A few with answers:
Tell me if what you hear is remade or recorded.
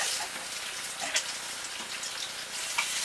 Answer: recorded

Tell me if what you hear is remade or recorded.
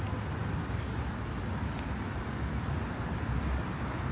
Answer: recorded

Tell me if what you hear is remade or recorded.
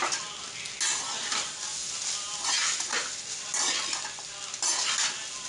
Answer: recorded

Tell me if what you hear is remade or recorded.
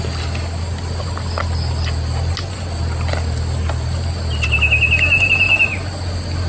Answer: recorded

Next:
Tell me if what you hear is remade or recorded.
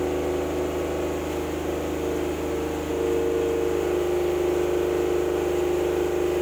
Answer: recorded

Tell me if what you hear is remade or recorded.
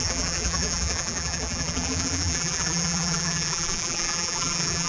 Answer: remade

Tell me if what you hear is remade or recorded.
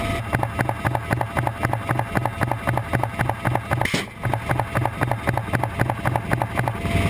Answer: recorded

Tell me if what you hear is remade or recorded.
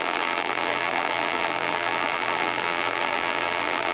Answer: remade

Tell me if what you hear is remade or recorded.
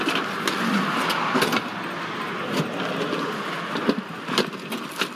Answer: recorded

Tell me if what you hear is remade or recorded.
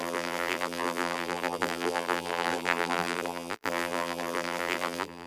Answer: remade